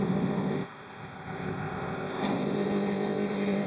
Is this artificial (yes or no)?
yes